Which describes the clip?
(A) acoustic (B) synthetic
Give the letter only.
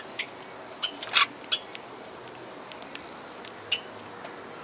A